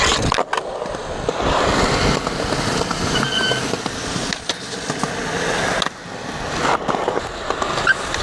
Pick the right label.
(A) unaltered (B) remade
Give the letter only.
A